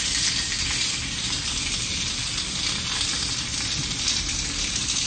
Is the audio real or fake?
real